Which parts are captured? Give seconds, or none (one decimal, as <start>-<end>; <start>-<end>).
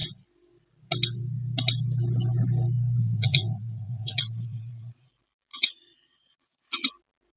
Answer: 0.0-3.0; 5.1-5.5; 6.9-7.4